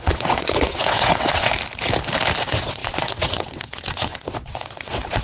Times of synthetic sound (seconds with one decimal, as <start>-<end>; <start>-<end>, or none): 0.0-1.5; 2.4-5.2